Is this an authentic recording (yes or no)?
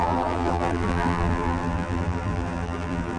no